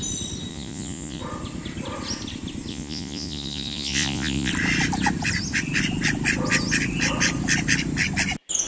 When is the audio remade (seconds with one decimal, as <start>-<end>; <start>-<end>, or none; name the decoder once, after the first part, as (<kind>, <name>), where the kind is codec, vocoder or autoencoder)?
0.5-1.2 (vocoder, Vocos); 2.7-4.5